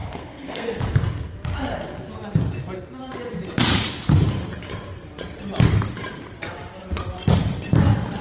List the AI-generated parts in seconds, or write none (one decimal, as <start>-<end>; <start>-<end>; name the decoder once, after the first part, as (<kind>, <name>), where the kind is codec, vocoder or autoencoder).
0.0-0.8 (codec, SNAC)